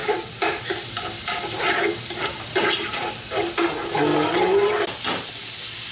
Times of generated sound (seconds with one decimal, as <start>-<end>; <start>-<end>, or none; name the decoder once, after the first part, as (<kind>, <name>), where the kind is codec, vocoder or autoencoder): 0.0-3.1 (vocoder, BigVGAN v2)